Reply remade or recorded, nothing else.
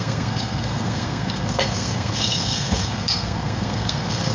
remade